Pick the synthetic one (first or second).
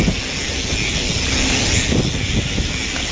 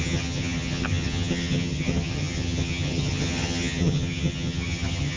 second